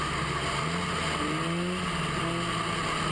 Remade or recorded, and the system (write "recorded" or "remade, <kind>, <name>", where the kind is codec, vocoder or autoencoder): recorded